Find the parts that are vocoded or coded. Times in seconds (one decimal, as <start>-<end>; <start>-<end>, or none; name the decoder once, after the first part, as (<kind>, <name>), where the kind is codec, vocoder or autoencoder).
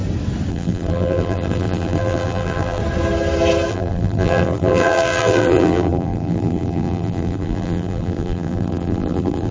0.5-2.8 (vocoder, BigVGAN v2); 3.7-9.5